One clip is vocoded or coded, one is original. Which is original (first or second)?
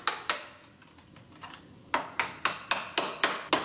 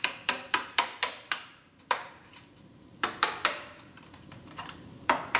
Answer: first